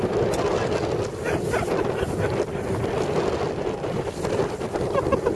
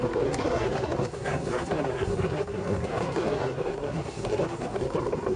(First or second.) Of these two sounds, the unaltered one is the first